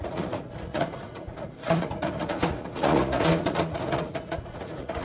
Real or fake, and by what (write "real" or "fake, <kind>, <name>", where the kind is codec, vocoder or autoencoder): fake, vocoder, Vocos